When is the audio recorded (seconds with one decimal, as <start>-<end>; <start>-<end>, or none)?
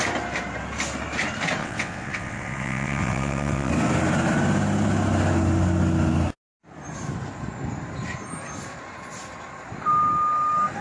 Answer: 0.0-1.6; 3.7-10.8